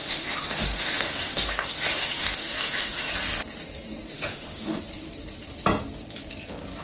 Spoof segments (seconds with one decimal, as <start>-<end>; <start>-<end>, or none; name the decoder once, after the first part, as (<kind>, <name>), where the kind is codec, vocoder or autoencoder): 0.0-3.1 (autoencoder, DAC-VAE); 4.1-4.8